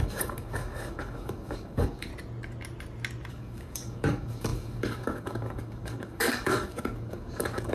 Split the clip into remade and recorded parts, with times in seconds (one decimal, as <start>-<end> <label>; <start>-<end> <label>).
0.0-2.1 remade; 2.1-3.3 recorded; 3.3-7.7 remade